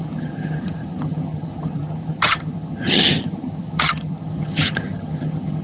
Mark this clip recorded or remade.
remade